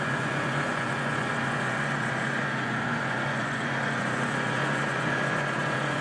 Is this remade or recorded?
remade